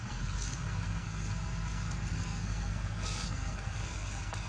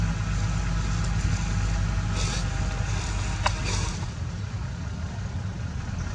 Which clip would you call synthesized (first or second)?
first